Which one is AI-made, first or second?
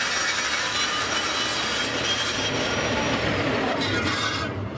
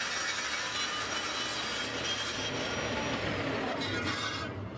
first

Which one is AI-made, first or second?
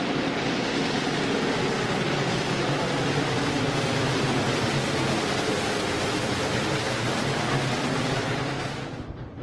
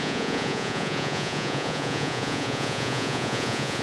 second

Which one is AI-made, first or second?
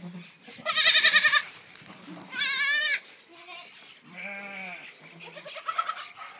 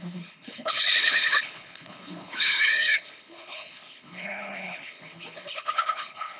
second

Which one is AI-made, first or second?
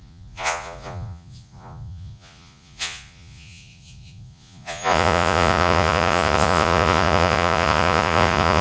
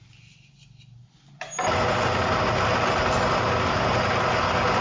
first